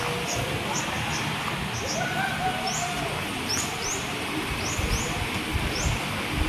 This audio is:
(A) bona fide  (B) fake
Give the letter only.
A